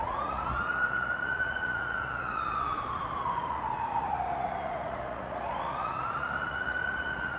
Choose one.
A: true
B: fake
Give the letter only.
B